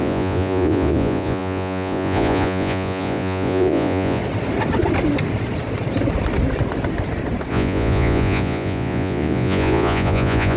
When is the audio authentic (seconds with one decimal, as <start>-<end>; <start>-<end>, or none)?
4.2-7.5